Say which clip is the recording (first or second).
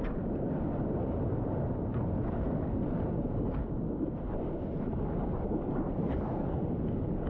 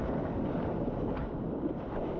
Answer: first